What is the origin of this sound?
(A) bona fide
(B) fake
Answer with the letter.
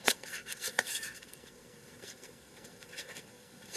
B